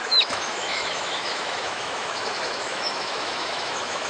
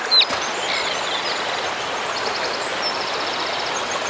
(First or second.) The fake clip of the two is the first